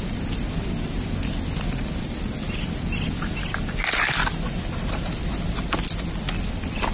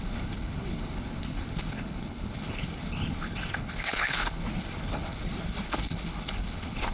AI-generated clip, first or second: second